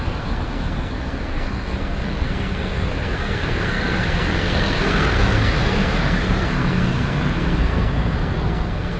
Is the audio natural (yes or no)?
no